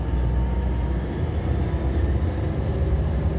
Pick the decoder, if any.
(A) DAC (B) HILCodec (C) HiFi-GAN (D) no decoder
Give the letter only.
D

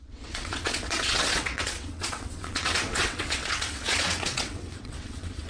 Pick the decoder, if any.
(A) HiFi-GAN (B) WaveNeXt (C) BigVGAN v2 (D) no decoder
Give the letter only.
B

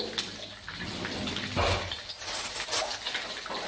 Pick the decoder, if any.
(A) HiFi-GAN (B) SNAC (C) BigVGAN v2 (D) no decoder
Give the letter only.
D